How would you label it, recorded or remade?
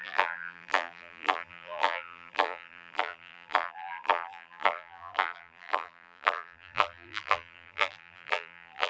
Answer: remade